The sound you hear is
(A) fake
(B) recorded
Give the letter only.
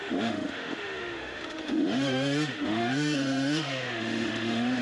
A